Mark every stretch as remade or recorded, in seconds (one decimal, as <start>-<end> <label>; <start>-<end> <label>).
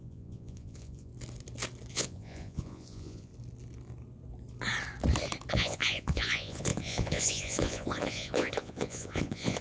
0.0-1.1 remade; 1.1-1.9 recorded; 1.9-3.3 remade; 3.3-5.5 recorded; 5.5-9.6 remade